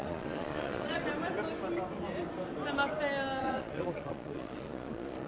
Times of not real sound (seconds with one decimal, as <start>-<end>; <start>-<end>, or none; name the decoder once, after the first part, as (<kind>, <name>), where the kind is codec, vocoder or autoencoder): 0.0-1.0 (vocoder, Vocos); 3.4-5.3